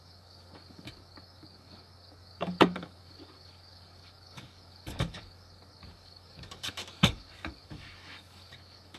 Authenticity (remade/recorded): remade